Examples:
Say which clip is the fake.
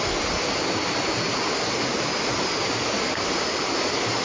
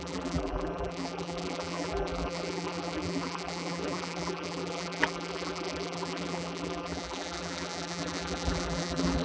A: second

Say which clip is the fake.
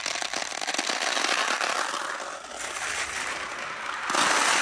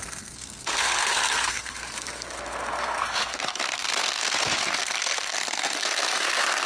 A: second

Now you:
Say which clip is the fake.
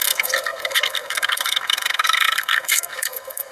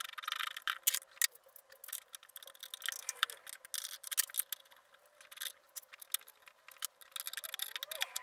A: first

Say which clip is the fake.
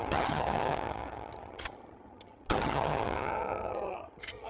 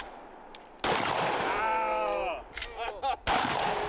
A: first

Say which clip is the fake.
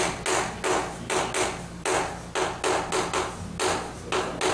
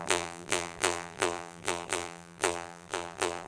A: second